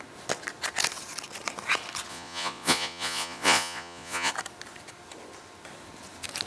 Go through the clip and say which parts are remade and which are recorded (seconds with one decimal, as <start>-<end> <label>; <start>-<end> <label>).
0.0-2.1 recorded; 2.1-4.3 remade; 4.3-6.5 recorded